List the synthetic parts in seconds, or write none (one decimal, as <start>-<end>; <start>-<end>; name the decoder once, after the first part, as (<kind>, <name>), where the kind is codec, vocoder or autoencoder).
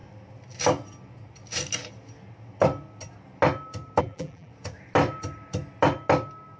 4.0-4.5 (vocoder, BigVGAN v2)